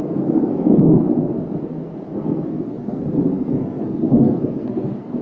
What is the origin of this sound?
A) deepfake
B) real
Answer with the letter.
A